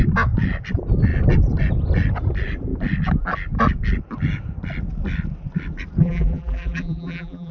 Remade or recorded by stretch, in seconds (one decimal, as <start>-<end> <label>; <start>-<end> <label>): 0.0-6.0 recorded; 6.0-7.5 remade